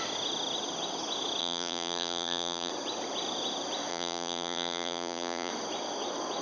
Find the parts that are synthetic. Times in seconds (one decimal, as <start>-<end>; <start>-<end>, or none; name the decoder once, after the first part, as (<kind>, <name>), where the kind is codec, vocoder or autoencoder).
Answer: 1.4-2.7 (vocoder, BigVGAN v2); 3.9-5.5